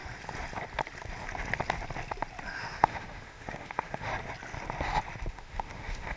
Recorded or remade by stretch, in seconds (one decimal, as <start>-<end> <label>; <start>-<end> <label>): 0.0-2.6 recorded; 2.6-4.1 remade; 4.1-5.3 recorded; 5.3-6.2 remade